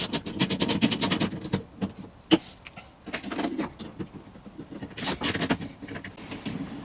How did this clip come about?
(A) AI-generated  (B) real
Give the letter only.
B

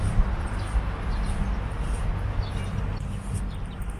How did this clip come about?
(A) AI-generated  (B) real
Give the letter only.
B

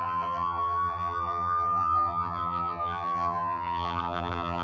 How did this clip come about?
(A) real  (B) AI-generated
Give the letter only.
B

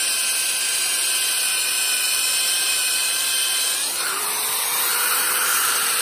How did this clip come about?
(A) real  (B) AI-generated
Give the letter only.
B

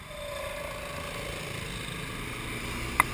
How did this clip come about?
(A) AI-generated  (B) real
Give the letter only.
B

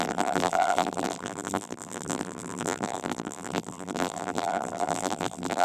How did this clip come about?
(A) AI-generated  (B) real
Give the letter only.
A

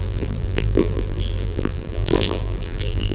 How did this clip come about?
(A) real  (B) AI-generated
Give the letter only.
B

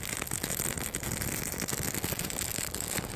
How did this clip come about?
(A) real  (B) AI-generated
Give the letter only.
A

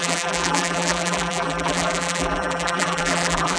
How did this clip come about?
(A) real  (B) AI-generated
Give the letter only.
B